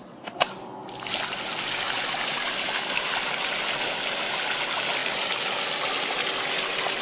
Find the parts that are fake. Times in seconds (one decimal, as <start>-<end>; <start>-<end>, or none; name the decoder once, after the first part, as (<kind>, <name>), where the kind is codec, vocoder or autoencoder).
none